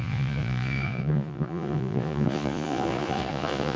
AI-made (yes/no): yes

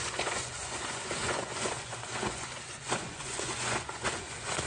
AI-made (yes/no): yes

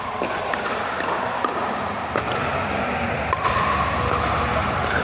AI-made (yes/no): no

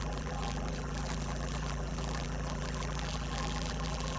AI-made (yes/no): yes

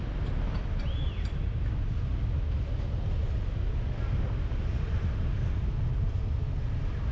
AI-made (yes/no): no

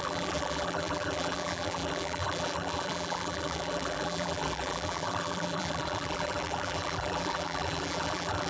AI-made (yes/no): yes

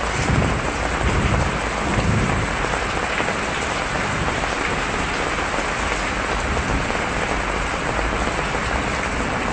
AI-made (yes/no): no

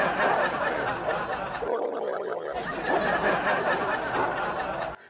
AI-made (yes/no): no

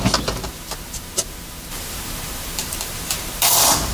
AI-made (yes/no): yes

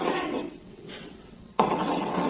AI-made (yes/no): yes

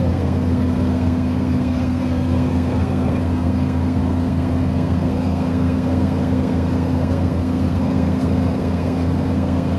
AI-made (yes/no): yes